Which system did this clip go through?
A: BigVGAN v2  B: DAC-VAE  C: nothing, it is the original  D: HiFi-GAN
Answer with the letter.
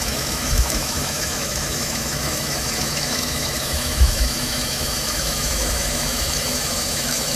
B